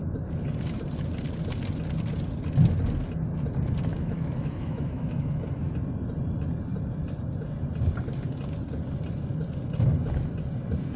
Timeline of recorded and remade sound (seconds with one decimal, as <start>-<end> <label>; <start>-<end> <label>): 0.0-3.9 recorded; 3.9-5.5 remade; 5.5-11.0 recorded